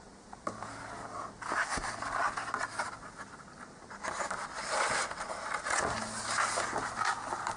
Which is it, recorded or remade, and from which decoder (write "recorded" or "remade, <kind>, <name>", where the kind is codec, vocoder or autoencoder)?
recorded